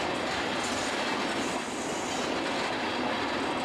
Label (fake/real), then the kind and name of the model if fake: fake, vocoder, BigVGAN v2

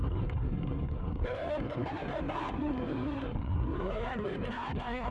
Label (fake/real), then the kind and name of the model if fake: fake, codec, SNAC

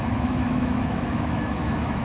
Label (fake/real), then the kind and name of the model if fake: fake, autoencoder, DAC-VAE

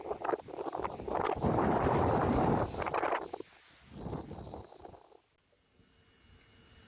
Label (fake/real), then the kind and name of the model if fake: real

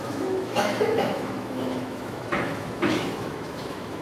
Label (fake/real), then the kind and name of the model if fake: fake, autoencoder, DAC-VAE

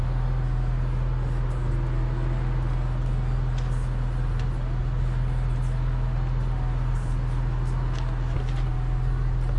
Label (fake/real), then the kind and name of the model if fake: real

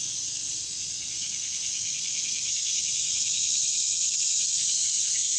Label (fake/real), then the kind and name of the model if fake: fake, codec, SNAC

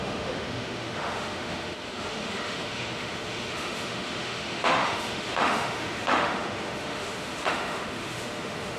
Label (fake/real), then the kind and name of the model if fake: fake, autoencoder, DAC-VAE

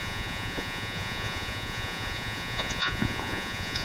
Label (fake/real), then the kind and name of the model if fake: fake, vocoder, Vocos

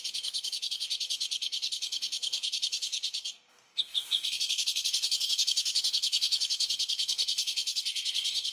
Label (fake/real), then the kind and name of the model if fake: fake, codec, DAC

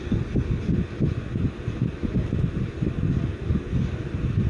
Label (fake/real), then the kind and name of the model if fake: real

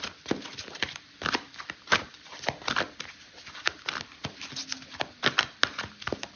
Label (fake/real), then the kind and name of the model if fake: real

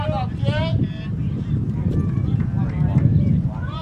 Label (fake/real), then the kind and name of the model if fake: real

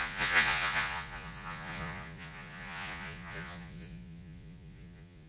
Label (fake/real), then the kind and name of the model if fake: fake, vocoder, Vocos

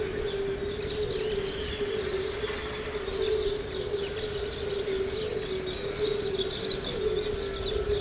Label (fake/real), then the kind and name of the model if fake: real